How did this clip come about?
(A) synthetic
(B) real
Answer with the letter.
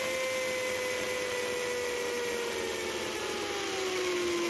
B